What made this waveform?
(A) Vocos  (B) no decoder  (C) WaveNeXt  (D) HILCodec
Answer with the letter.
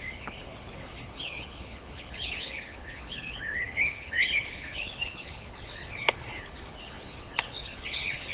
D